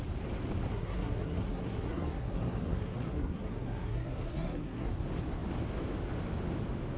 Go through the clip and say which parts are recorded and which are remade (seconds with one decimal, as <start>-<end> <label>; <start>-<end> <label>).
0.0-0.7 recorded; 0.7-4.9 remade; 4.9-7.0 recorded